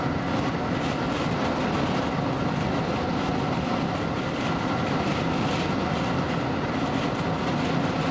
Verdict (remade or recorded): recorded